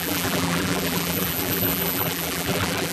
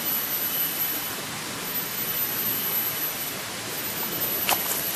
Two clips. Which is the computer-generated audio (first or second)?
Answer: first